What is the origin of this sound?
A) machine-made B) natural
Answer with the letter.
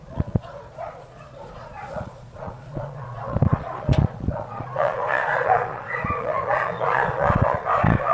A